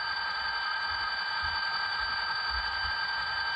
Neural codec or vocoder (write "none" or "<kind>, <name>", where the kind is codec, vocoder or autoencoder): none